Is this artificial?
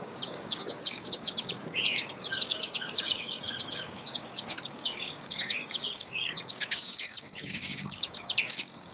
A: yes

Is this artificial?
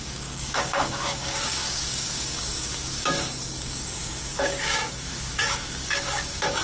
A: yes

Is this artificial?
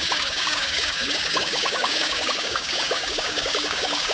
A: yes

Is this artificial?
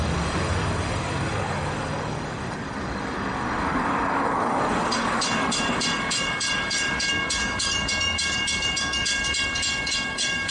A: yes